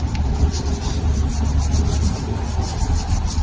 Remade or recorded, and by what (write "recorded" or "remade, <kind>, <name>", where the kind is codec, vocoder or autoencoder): recorded